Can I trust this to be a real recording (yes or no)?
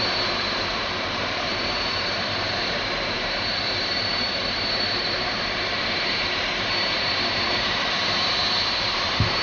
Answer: no